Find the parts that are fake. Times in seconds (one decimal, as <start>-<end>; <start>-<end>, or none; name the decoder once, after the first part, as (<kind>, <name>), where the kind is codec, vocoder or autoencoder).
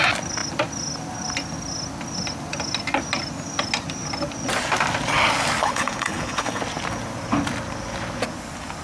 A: 5.6-6.6 (codec, HILCodec)